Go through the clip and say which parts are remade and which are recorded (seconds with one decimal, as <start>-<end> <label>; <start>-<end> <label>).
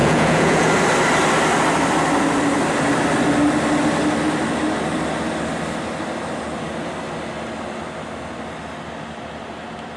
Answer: 0.0-0.7 remade; 0.7-10.0 recorded